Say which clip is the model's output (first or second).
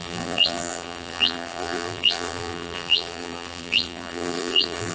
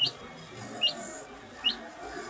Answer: first